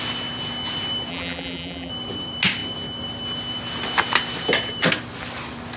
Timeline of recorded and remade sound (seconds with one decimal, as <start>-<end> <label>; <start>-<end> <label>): 0.0-1.1 recorded; 1.1-1.9 remade; 1.9-5.8 recorded